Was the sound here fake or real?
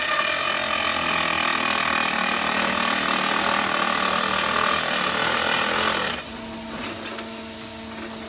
real